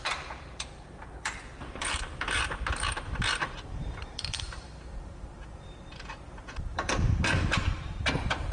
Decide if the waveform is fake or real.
fake